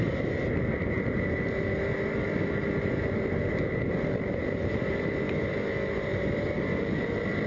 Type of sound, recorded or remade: recorded